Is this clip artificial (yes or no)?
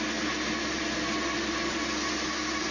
no